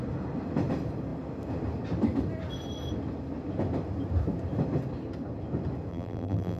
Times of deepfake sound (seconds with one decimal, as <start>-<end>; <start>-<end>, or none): 5.9-6.6